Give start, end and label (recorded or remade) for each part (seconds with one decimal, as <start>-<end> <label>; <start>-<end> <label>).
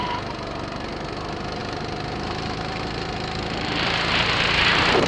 0.0-5.1 recorded